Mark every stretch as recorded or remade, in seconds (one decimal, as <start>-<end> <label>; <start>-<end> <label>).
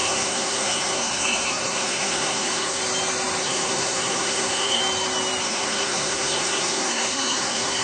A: 0.0-2.8 remade; 2.8-3.4 recorded; 3.4-4.8 remade; 4.8-5.4 recorded; 5.4-7.8 remade